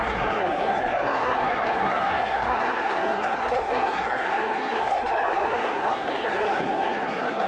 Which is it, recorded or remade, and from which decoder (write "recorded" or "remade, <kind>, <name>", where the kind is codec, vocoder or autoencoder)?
remade, codec, SNAC